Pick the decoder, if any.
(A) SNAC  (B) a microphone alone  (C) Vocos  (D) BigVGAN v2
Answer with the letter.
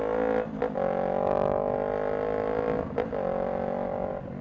B